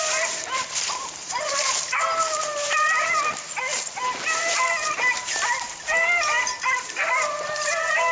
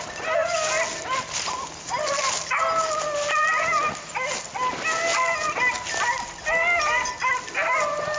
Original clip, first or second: second